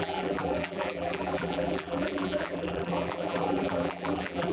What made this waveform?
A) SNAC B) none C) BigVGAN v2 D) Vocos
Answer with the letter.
C